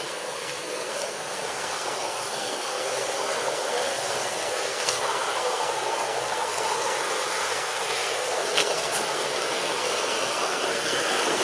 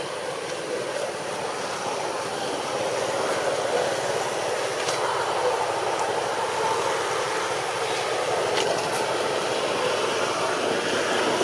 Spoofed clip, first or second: first